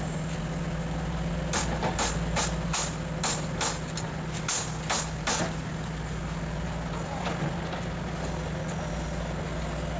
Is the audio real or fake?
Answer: real